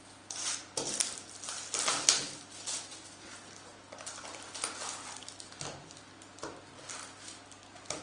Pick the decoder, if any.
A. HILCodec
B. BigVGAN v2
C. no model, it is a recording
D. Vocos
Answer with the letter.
C